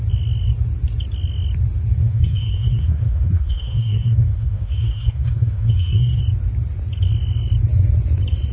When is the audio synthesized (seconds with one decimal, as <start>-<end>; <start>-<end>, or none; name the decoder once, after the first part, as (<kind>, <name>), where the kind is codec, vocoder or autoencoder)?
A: 2.0-6.2 (codec, SNAC)